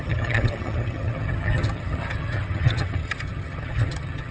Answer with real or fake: fake